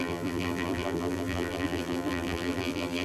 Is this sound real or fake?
fake